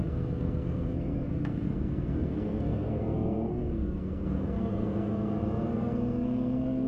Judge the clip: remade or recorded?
remade